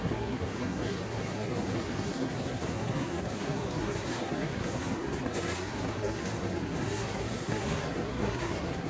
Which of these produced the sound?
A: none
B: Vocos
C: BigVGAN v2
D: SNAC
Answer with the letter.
D